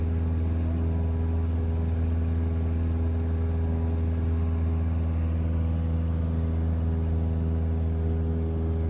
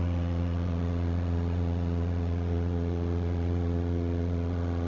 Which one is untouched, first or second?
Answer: first